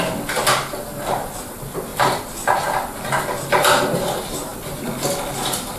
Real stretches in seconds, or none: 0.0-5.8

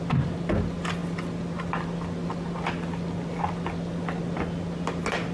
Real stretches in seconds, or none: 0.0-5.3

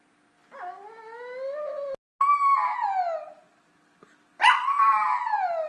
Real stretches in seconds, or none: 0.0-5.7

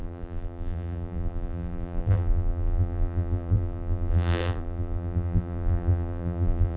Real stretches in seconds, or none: none

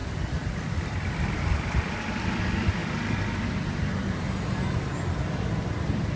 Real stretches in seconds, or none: 2.4-6.2

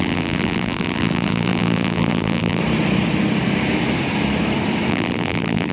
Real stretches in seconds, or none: 2.6-4.9

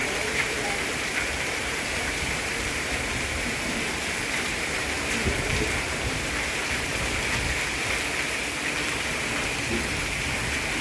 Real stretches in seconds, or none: 6.9-10.8

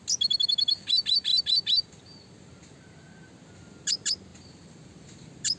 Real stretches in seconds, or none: 0.0-4.3